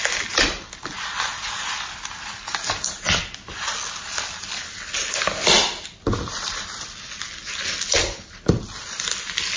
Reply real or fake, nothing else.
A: real